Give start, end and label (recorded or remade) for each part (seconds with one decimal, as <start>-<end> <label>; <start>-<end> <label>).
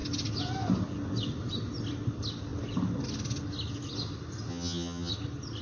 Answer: 0.0-4.5 recorded; 4.5-5.1 remade; 5.1-5.6 recorded